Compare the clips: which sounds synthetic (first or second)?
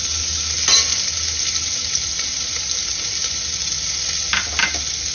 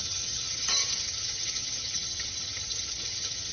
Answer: second